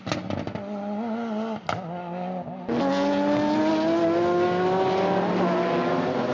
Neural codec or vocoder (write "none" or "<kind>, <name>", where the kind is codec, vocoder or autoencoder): none